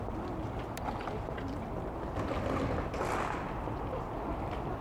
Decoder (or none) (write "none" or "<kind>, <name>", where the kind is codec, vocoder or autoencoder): none